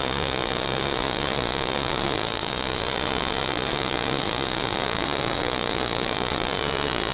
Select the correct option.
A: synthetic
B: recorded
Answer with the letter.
A